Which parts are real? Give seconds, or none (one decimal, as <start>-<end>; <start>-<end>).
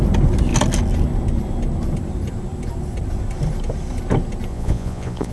0.0-4.5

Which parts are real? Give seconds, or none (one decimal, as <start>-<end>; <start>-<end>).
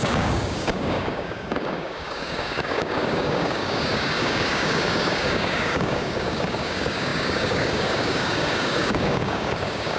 none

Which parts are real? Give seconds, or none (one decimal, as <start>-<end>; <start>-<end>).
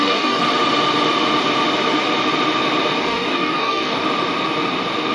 0.4-3.0; 4.0-5.1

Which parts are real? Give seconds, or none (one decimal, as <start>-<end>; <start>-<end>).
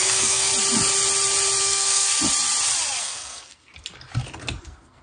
0.5-1.6; 2.1-3.0; 3.7-4.6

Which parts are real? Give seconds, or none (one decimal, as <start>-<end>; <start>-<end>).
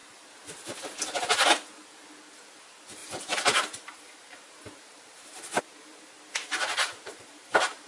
0.8-3.0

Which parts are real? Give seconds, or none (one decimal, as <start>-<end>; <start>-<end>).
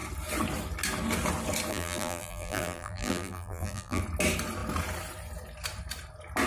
0.0-1.7; 4.0-6.5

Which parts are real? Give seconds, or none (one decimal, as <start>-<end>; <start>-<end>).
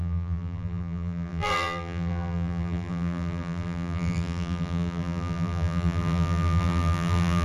none